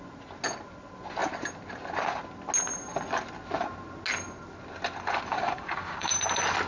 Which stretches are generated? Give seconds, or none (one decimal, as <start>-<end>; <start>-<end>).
5.3-6.1